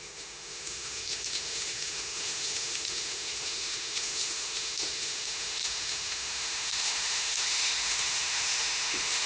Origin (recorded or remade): remade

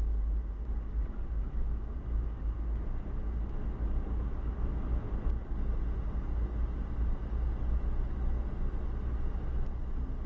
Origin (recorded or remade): recorded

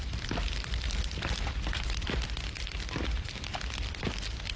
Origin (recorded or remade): remade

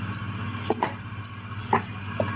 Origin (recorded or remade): recorded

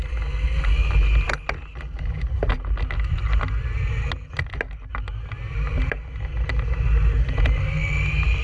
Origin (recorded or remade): recorded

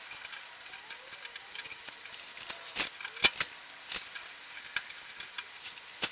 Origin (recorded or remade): recorded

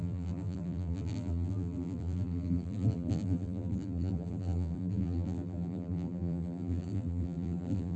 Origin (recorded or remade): remade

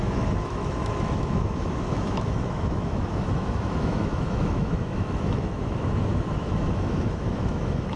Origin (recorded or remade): remade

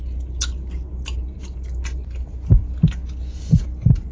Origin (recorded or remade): recorded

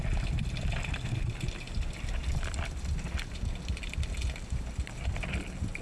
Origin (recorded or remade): recorded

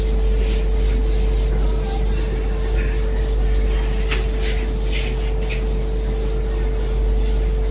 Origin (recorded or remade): recorded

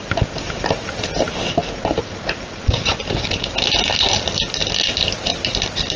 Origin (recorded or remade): recorded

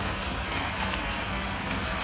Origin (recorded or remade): remade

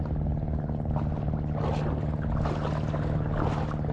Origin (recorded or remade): recorded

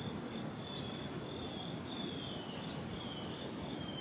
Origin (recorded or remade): recorded